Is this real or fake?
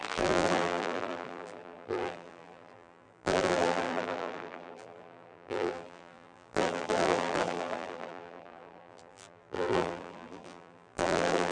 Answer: fake